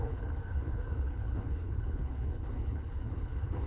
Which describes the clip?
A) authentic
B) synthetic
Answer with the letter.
B